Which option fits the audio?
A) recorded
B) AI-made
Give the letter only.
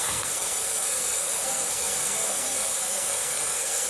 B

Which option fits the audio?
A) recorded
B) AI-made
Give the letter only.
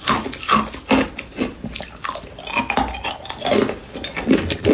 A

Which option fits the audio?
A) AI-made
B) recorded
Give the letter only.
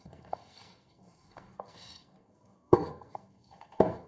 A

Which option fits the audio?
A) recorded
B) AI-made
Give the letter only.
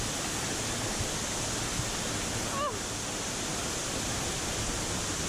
A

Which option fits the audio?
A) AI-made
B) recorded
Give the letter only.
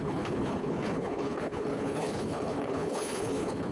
A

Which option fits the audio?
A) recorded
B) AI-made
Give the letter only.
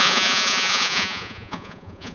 B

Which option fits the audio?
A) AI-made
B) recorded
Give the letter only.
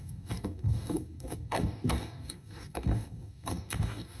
A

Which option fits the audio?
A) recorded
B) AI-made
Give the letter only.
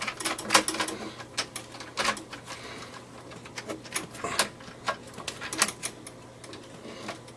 A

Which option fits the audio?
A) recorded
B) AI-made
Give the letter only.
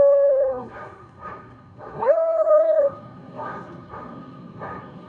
B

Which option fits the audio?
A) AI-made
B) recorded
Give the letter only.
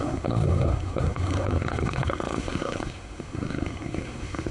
A